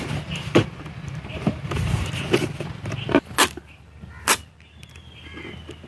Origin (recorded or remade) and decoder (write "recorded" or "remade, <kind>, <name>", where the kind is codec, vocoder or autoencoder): recorded